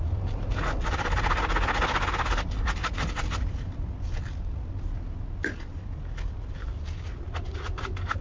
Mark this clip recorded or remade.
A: recorded